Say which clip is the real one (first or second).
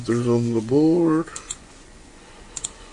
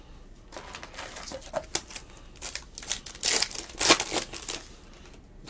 second